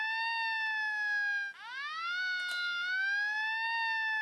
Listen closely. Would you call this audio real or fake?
real